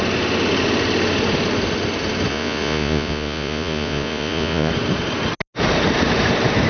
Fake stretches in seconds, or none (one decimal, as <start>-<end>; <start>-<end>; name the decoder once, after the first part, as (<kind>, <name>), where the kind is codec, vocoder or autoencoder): 2.3-4.7 (vocoder, Vocos)